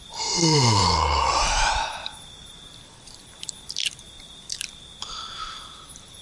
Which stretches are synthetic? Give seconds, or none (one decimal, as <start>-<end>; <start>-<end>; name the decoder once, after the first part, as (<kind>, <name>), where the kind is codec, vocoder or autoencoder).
0.0-6.2 (vocoder, BigVGAN v2)